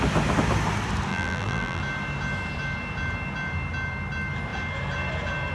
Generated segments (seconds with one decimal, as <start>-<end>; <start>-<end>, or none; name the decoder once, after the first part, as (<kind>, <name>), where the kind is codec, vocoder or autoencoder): 1.1-1.8 (vocoder, BigVGAN v2)